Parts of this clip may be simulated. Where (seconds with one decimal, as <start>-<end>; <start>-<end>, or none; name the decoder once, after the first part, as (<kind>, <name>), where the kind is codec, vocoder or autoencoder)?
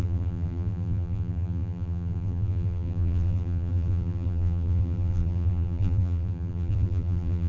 0.0-7.5 (vocoder, BigVGAN v2)